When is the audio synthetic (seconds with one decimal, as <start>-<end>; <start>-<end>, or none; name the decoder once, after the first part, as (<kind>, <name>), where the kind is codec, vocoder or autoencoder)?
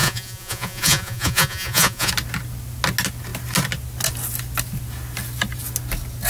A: 0.0-2.1 (vocoder, Vocos)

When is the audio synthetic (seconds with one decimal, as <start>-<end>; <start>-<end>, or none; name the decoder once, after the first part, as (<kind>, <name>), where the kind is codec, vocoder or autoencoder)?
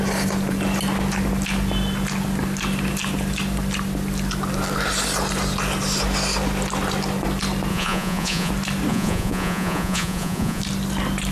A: 7.7-8.5 (vocoder, Vocos); 8.9-10.6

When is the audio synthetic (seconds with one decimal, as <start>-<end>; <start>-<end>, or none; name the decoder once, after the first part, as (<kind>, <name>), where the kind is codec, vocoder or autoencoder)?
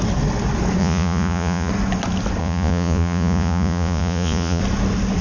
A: 0.8-1.7 (vocoder, Vocos); 2.4-4.6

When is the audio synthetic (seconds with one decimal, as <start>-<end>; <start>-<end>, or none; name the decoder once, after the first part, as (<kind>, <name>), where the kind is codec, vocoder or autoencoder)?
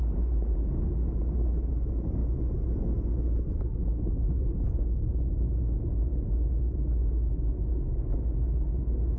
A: none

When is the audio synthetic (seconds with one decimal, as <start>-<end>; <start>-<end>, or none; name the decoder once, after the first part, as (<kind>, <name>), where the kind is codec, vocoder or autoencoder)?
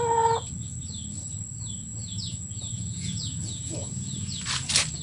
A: 1.9-4.4 (vocoder, Vocos)